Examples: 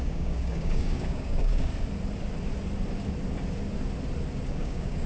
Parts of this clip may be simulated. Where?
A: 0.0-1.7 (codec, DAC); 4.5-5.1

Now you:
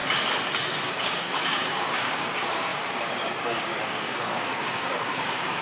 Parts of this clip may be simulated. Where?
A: 1.0-5.6 (codec, DAC)

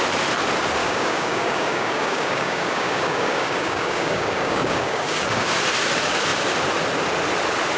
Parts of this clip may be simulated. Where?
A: 0.8-5.5 (codec, DAC)

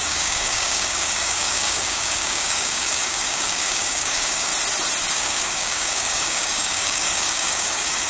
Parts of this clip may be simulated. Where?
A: 0.0-4.5 (codec, DAC); 5.1-8.1

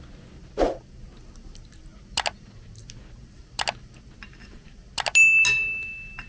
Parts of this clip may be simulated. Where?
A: none

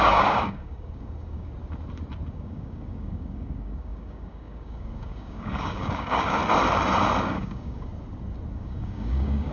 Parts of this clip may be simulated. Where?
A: 0.0-1.5 (codec, DAC); 2.3-6.4; 7.3-7.9; 8.5-9.5

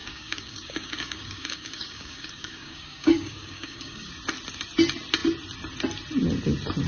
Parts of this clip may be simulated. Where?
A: 0.0-4.1 (codec, DAC)